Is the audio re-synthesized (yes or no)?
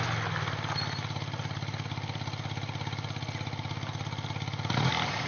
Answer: no